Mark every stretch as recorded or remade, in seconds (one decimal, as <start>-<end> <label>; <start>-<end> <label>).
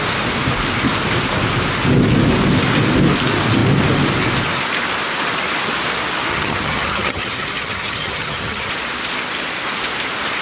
0.0-6.3 recorded; 6.3-8.7 remade; 8.7-10.4 recorded